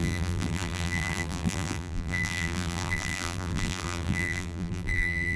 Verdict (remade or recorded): remade